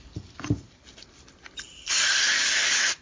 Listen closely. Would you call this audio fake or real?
real